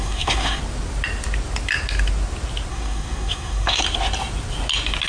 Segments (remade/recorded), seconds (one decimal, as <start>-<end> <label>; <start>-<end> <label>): 0.0-0.6 remade; 0.6-2.7 recorded; 2.7-3.8 remade; 3.8-5.1 recorded